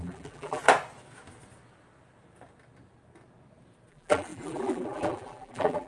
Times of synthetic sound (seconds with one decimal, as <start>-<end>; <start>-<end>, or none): 0.0-0.6; 3.9-5.9